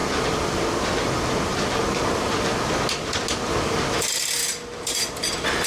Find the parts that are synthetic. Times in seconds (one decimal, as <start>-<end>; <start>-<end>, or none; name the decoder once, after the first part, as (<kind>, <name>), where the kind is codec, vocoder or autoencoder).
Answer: none